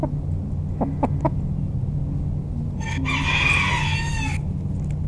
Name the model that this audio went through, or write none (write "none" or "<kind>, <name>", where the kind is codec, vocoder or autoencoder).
none